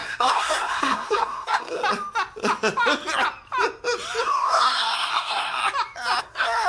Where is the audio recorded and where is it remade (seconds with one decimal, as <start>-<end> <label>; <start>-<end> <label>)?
0.0-1.8 remade; 1.8-4.2 recorded; 4.2-5.6 remade; 5.6-6.2 recorded; 6.2-6.7 remade

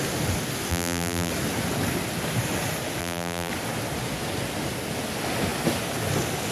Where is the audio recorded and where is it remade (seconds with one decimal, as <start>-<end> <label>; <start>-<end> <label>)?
0.0-0.7 recorded; 0.7-1.3 remade; 1.3-3.0 recorded; 3.0-3.5 remade; 3.5-6.5 recorded

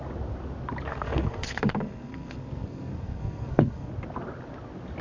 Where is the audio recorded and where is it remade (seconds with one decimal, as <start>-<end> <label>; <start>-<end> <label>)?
0.0-0.9 recorded; 0.9-3.9 remade; 3.9-5.0 recorded

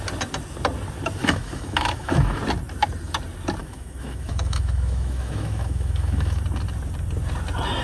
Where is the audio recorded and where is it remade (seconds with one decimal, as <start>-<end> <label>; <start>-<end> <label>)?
0.0-1.2 recorded; 1.2-2.4 remade; 2.4-3.6 recorded; 3.6-6.4 remade; 6.4-7.8 recorded

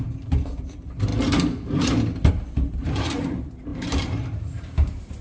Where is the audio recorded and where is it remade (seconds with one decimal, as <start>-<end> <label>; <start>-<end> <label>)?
0.0-1.1 remade; 1.1-2.3 recorded; 2.3-5.2 remade